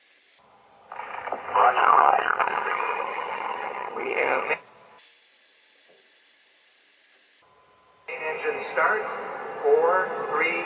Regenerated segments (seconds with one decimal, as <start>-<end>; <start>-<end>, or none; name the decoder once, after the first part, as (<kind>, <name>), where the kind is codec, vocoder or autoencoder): 1.8-4.5 (vocoder, HiFi-GAN)